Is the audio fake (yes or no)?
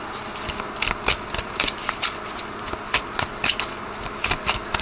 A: no